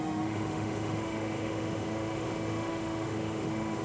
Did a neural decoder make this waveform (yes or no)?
yes